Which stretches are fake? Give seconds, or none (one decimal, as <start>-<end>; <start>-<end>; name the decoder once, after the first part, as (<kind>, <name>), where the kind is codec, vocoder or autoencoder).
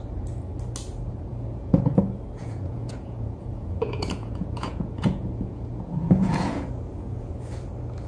1.3-2.0 (vocoder, Vocos); 2.4-7.3